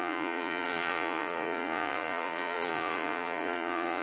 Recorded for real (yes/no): no